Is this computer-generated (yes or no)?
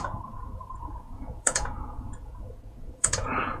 yes